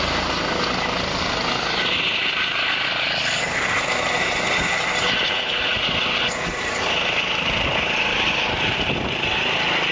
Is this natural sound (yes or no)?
yes